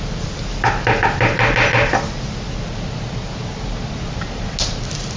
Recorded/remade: recorded